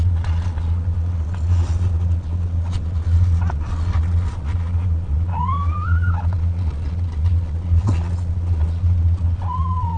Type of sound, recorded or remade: remade